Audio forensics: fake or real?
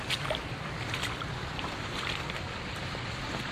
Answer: fake